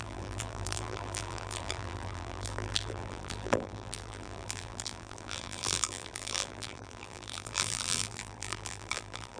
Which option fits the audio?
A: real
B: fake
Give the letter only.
B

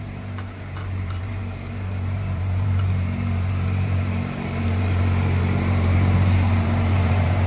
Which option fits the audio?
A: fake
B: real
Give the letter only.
A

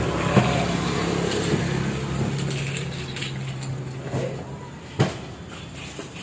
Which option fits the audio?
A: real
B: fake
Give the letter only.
A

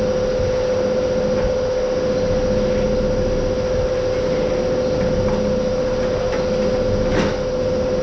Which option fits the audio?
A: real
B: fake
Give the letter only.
A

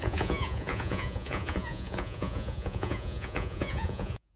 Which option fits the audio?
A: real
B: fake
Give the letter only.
B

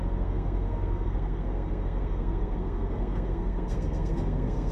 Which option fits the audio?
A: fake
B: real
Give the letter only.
A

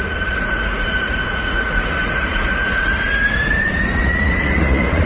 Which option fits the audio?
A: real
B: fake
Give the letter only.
B